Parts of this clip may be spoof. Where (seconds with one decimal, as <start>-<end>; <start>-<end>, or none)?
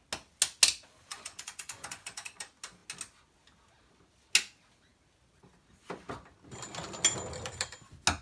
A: 1.1-2.4